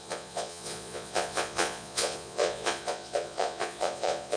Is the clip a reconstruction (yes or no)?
yes